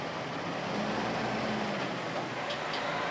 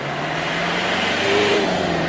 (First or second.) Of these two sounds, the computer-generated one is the second